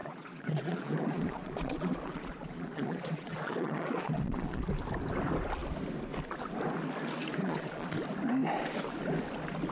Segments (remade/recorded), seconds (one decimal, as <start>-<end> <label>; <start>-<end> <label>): 0.0-4.6 remade; 4.6-7.4 recorded; 7.4-7.9 remade; 7.9-9.7 recorded

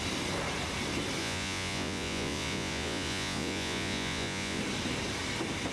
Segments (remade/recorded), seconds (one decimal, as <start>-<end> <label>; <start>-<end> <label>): 0.0-1.2 recorded; 1.2-4.6 remade; 4.6-5.7 recorded

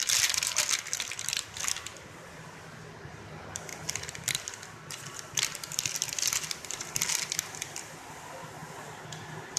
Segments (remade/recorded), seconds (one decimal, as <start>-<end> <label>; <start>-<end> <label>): 0.0-9.6 recorded

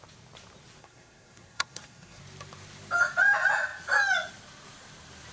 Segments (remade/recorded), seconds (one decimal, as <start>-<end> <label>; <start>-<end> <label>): 0.0-0.8 recorded; 0.8-2.2 remade; 2.2-5.3 recorded

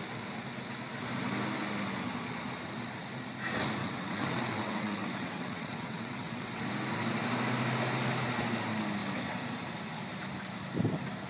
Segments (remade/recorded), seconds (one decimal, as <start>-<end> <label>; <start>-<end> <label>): 0.0-3.8 recorded; 3.8-6.6 remade; 6.6-11.3 recorded